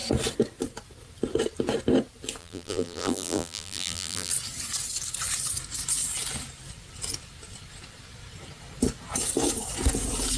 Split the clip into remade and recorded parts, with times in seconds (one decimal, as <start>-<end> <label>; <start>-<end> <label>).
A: 0.0-2.4 recorded; 2.4-4.3 remade; 4.3-10.4 recorded